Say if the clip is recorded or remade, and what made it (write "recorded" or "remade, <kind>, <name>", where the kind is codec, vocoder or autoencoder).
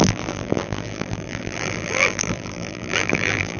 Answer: remade, vocoder, BigVGAN v2